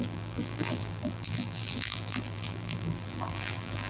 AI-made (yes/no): yes